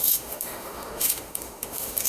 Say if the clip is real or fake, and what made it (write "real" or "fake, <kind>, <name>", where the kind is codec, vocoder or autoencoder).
fake, autoencoder, DAC-VAE